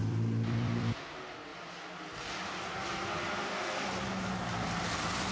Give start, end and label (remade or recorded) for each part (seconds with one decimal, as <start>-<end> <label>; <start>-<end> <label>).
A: 0.0-0.9 remade; 0.9-5.3 recorded